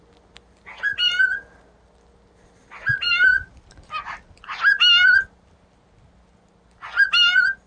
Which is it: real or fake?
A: real